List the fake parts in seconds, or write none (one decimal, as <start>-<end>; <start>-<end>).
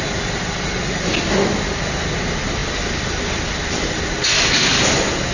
none